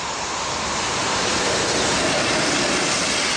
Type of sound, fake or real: real